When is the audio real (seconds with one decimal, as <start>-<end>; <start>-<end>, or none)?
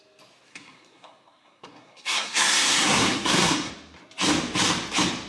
0.0-0.5; 3.7-5.3